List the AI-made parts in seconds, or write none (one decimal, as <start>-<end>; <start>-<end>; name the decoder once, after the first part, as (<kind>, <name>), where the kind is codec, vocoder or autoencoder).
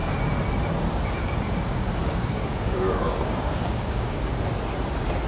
1.2-4.4 (codec, DAC)